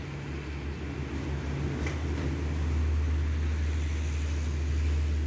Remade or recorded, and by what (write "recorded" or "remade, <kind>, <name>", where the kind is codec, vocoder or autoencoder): recorded